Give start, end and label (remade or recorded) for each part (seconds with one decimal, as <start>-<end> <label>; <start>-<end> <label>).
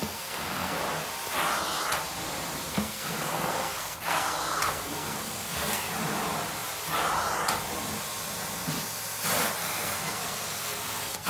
0.0-0.8 remade; 0.8-2.7 recorded; 2.7-5.9 remade; 5.9-9.6 recorded; 9.6-11.3 remade